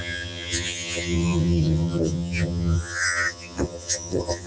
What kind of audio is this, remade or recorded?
remade